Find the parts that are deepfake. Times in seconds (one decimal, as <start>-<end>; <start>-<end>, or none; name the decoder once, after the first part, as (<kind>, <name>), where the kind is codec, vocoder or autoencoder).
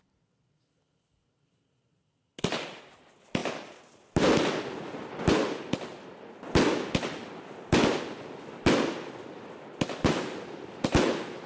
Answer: none